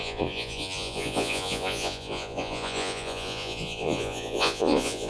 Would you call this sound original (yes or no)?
no